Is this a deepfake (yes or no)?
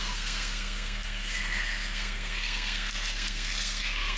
yes